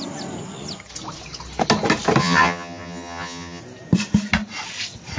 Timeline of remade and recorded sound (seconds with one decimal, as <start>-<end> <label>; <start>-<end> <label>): 0.0-2.2 recorded; 2.2-3.6 remade; 3.6-5.2 recorded